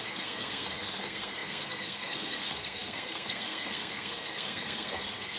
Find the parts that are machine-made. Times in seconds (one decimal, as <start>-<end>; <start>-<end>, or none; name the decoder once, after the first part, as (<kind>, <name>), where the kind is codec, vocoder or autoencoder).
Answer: 0.0-5.4 (codec, SNAC)